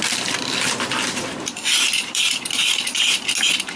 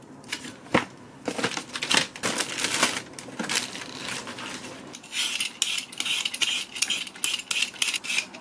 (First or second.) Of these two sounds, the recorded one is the second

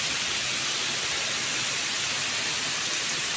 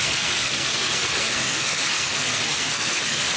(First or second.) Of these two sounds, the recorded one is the first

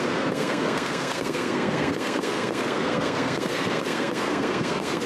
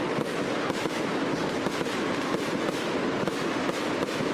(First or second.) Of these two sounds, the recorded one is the second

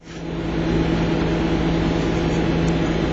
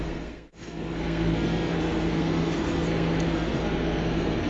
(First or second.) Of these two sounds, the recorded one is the first